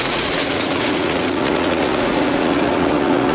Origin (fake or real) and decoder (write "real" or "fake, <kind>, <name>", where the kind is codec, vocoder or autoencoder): fake, vocoder, Vocos